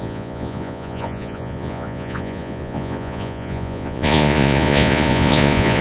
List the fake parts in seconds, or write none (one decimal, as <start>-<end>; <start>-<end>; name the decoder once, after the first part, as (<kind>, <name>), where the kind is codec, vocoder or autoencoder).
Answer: 0.0-5.8 (vocoder, Vocos)